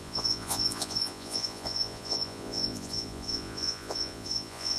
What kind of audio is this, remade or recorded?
remade